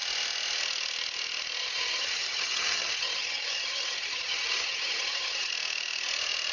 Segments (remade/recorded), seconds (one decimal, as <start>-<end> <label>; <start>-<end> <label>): 0.0-1.6 recorded; 1.6-5.5 remade; 5.5-6.5 recorded